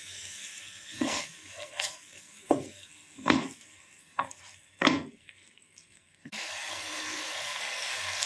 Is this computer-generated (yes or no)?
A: yes